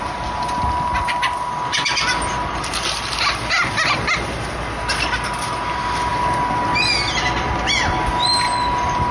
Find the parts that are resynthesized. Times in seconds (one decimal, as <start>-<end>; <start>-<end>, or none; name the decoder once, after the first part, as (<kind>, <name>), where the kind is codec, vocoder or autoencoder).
none

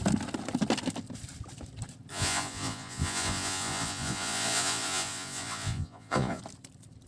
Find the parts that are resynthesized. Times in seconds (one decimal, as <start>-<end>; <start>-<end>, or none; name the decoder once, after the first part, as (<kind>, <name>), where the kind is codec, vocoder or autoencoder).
2.1-6.4 (vocoder, Vocos)

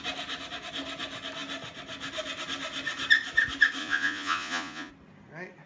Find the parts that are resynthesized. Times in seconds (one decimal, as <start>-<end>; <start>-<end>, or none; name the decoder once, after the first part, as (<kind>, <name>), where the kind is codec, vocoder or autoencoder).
3.8-4.9 (vocoder, Vocos)

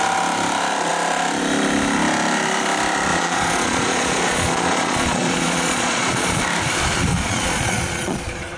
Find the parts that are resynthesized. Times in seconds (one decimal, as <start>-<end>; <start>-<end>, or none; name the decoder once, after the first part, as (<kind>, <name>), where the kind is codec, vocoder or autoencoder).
3.1-6.4 (vocoder, Vocos); 7.1-8.6

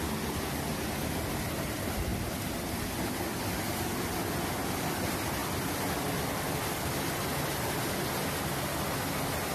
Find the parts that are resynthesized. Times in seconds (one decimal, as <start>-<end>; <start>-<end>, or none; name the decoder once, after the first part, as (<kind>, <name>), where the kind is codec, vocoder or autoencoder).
none